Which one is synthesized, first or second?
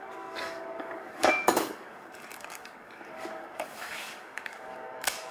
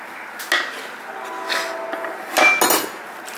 first